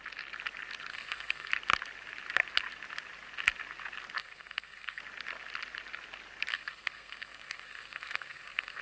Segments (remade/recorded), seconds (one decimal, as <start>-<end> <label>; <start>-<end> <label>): 0.0-0.9 recorded; 0.9-1.5 remade; 1.5-4.2 recorded; 4.2-5.0 remade; 5.0-6.5 recorded; 6.5-8.8 remade